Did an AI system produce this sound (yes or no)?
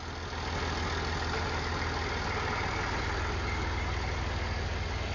no